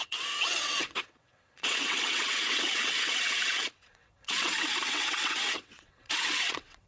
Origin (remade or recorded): remade